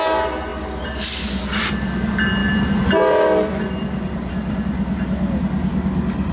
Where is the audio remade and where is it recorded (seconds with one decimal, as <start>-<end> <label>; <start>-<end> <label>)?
0.0-6.3 recorded